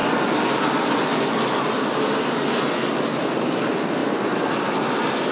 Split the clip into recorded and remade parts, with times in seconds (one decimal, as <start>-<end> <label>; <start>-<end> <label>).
0.0-5.3 recorded